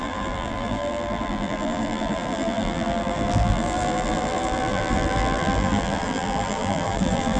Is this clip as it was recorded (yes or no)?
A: no